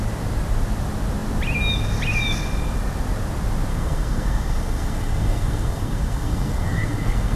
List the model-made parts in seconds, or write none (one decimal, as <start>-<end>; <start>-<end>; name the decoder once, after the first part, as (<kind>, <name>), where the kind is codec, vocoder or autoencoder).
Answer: 3.7-7.4 (codec, SNAC)